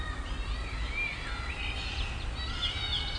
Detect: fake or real real